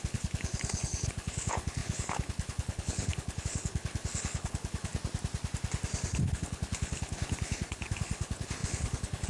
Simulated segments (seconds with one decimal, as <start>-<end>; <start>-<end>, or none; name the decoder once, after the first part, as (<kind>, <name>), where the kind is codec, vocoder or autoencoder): 0.0-4.9 (codec, HILCodec); 6.2-9.3